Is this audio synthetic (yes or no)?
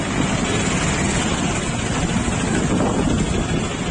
no